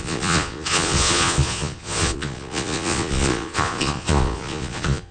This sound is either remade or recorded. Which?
remade